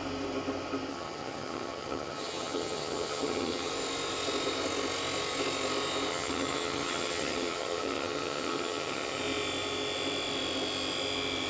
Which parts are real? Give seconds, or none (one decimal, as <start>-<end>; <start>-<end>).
0.0-0.9; 3.7-6.1; 9.2-11.5